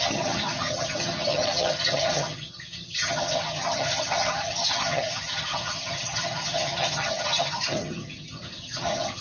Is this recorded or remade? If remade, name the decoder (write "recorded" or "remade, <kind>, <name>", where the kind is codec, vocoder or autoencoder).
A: remade, vocoder, HiFi-GAN